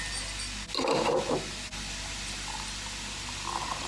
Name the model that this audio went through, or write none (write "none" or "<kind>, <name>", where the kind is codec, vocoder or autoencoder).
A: none